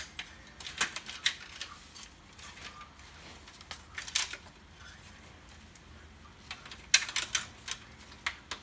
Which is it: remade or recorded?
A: recorded